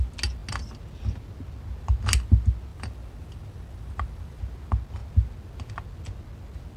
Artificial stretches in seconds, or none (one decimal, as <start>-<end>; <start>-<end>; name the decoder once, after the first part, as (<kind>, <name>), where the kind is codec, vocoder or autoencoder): 2.7-4.4 (vocoder, BigVGAN v2)